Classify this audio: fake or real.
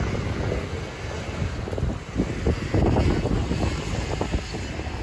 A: real